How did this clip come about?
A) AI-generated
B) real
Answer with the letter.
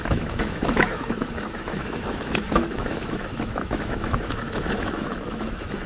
A